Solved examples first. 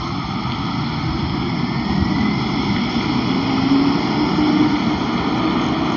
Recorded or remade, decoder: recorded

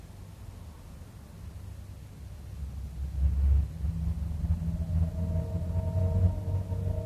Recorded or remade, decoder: recorded